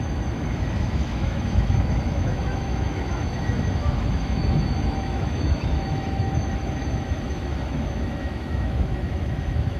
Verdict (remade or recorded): remade